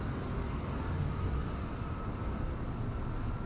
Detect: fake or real real